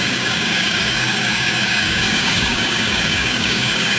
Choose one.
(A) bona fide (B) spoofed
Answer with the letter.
B